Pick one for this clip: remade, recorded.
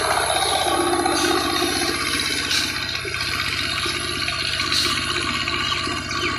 recorded